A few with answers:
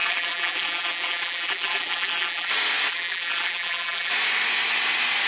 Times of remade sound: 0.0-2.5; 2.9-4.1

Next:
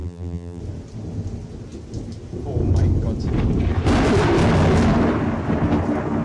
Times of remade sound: 0.0-0.6

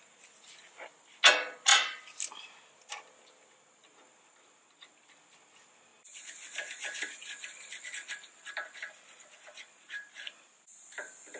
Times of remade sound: none

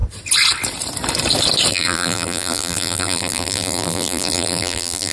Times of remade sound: 1.7-5.1

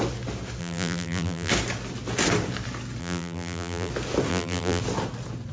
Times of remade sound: 0.6-1.5; 3.0-3.9; 4.3-4.8

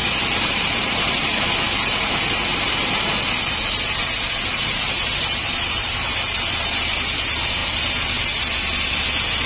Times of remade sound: 0.0-1.5; 2.5-3.1; 4.5-6.7

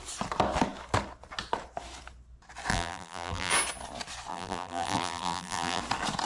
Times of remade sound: 2.7-3.5; 4.3-5.8